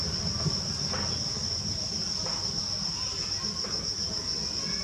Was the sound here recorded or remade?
recorded